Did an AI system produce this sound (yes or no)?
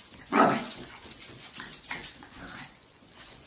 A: yes